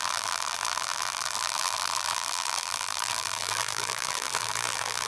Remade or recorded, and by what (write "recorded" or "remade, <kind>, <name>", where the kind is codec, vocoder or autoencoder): remade, vocoder, BigVGAN v2